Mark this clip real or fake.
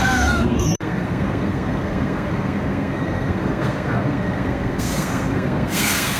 fake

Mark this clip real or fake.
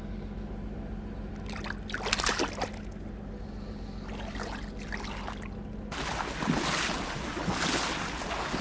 real